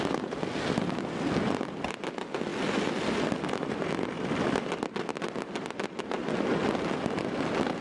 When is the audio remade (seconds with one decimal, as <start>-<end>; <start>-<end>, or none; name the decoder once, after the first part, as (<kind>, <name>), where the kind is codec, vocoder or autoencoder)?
none